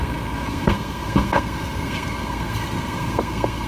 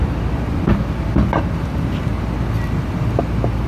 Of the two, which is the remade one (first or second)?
first